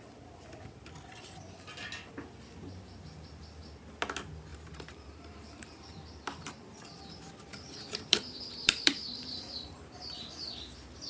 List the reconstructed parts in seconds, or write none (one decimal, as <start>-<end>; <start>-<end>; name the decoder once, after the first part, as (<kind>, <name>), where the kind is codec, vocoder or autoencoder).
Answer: 4.5-9.4 (vocoder, BigVGAN v2)